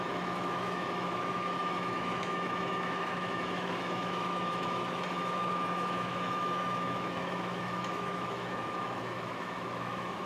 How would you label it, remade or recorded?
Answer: remade